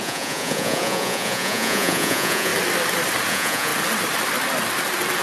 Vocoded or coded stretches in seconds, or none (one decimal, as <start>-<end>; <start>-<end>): 0.0-2.5; 3.3-3.7